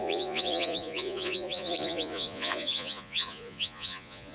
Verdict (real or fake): fake